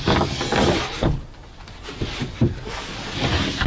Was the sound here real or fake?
real